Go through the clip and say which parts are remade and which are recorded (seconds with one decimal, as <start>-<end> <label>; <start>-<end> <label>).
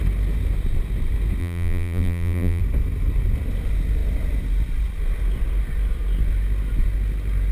0.0-1.4 recorded; 1.4-2.6 remade; 2.6-7.5 recorded